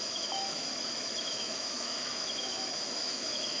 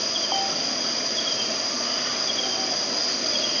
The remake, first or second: first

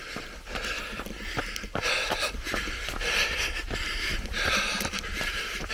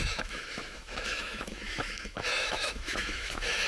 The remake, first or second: second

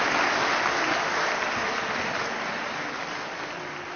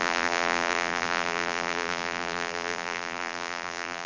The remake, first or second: second